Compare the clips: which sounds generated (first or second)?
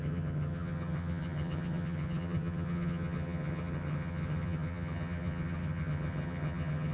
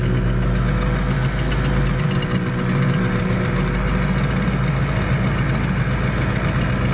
first